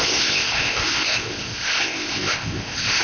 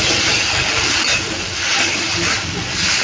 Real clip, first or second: second